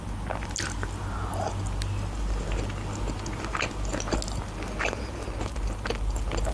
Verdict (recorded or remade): recorded